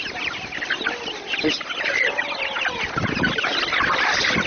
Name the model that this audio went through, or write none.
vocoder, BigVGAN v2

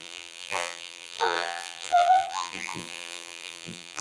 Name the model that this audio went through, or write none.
vocoder, BigVGAN v2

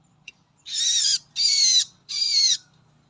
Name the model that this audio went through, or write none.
none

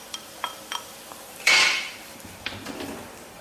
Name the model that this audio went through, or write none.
vocoder, BigVGAN v2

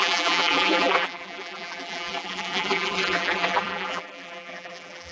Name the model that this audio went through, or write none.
vocoder, BigVGAN v2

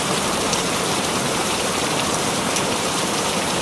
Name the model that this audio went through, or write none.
vocoder, BigVGAN v2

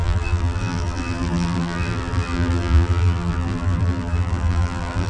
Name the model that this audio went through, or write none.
vocoder, BigVGAN v2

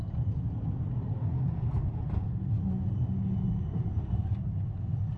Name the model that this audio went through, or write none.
none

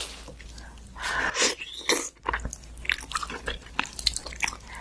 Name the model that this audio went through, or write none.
none